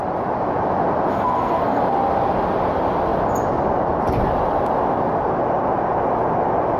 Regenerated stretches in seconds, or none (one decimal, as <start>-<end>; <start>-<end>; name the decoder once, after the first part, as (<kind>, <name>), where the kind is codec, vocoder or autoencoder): 1.1-1.8 (codec, SNAC)